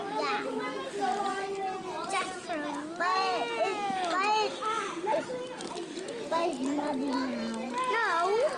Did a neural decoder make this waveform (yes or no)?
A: no